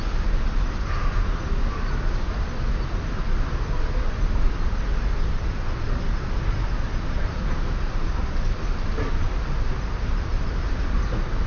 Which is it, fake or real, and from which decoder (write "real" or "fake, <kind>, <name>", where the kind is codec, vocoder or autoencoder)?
real